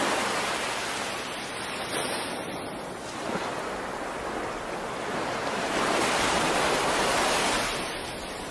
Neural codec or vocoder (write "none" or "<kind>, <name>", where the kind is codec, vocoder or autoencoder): none